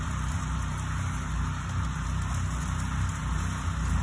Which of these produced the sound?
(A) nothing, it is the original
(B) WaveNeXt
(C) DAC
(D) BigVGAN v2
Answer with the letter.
D